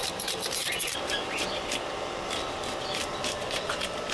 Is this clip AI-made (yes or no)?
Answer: yes